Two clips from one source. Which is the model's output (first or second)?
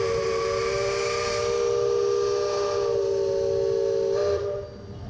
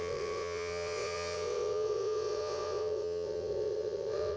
second